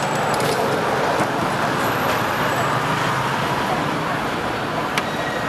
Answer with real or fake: real